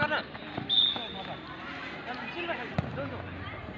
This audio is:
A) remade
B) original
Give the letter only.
B